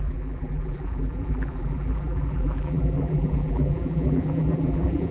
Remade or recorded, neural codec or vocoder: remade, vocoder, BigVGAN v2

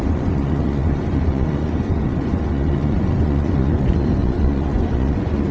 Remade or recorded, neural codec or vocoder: remade, vocoder, Vocos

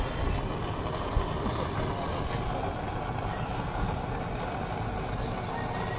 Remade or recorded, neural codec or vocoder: recorded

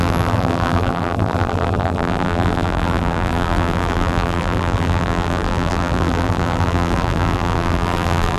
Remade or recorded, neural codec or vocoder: remade, vocoder, BigVGAN v2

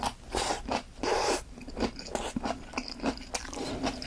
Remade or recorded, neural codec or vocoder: recorded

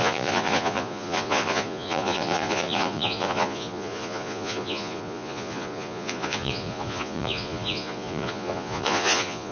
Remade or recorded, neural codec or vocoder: remade, vocoder, Vocos